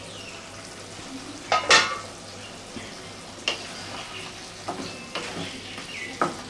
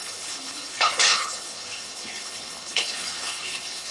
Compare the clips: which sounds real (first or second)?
first